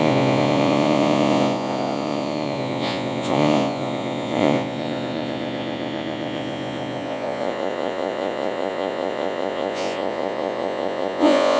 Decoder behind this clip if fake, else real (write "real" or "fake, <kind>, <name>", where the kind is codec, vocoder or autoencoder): fake, vocoder, Vocos